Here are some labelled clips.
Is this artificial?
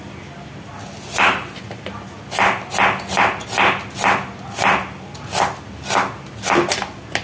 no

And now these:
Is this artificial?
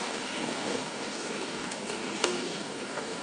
yes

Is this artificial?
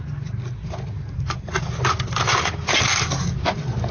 no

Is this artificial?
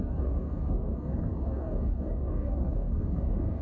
yes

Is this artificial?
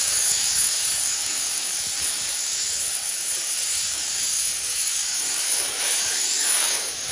yes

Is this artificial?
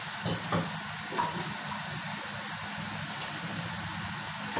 no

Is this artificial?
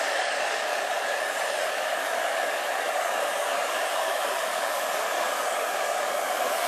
yes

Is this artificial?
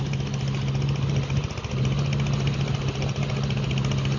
no